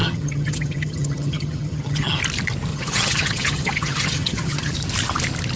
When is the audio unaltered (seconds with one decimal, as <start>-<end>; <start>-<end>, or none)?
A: 2.2-2.7; 4.7-5.6